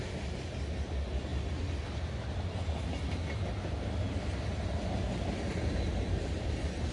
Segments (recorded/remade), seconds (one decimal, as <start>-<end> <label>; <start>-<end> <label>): 0.0-6.9 recorded